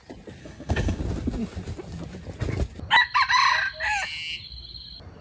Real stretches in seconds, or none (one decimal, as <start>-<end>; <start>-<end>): 0.0-0.4; 1.0-5.2